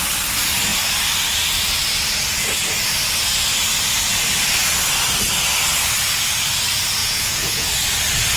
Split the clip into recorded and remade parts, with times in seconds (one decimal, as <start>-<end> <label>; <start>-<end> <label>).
0.0-7.0 recorded; 7.0-7.7 remade; 7.7-8.4 recorded